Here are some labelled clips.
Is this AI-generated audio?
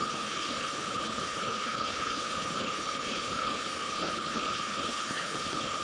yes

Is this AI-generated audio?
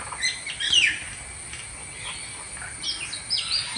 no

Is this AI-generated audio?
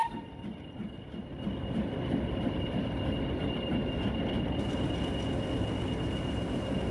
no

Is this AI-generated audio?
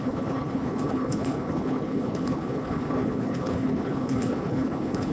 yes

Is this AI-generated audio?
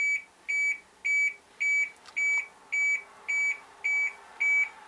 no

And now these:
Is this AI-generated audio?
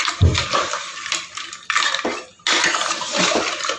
no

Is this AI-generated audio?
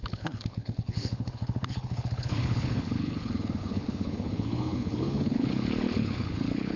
yes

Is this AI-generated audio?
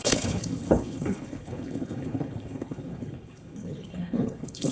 yes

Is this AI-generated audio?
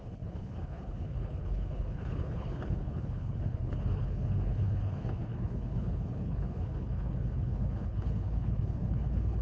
yes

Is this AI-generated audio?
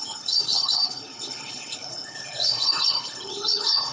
yes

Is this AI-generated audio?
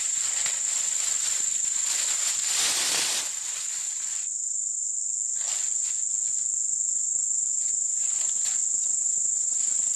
no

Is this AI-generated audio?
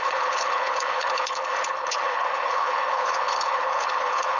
yes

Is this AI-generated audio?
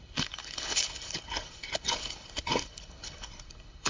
yes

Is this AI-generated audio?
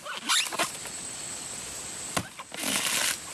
no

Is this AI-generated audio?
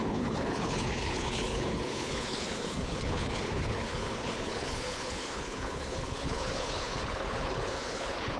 yes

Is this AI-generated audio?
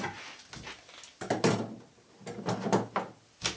no